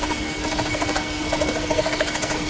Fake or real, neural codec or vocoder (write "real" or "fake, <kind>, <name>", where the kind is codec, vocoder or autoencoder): fake, codec, SNAC